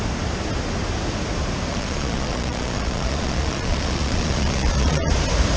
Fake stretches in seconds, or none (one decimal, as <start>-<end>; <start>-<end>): 1.7-5.1